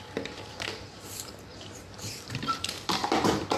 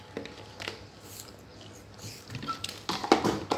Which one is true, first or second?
second